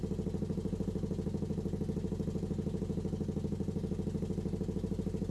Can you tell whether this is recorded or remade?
recorded